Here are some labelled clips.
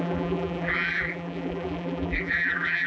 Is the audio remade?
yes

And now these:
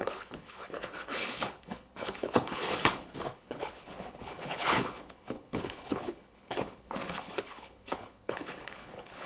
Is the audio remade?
yes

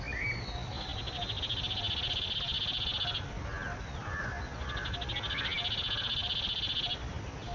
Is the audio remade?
no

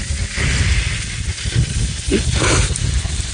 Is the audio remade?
no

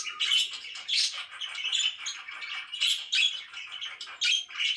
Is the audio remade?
no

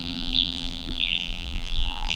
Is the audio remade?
yes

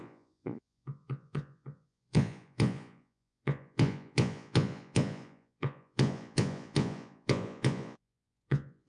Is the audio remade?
yes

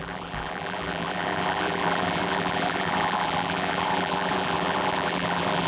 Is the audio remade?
yes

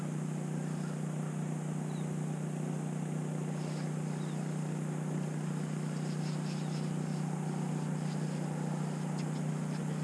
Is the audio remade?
no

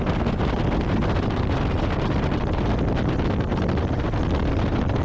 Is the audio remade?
no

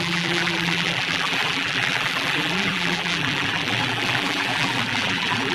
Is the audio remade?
yes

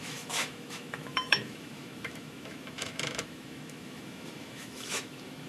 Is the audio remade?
yes